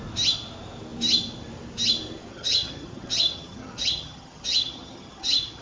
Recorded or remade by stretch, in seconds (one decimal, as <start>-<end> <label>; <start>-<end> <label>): 0.0-2.3 recorded; 2.3-5.6 remade